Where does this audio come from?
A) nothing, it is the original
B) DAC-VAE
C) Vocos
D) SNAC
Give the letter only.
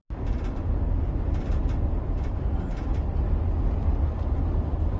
A